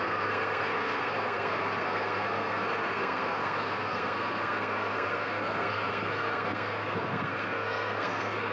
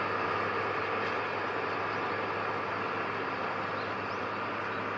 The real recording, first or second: second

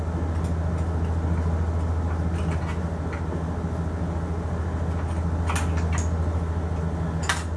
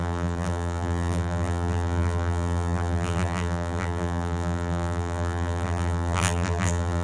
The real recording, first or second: first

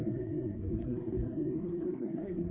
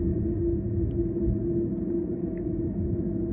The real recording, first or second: second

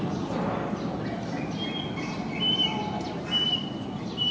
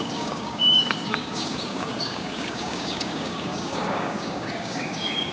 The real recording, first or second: first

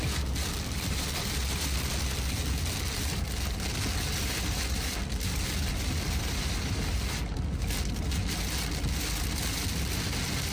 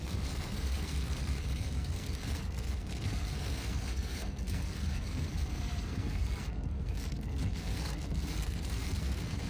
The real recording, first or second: first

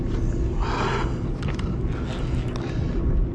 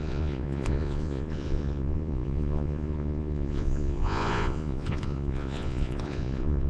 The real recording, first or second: first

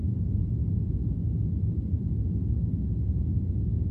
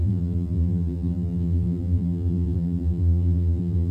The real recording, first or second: first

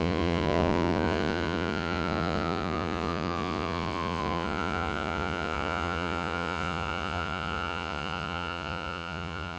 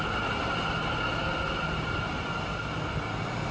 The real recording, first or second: second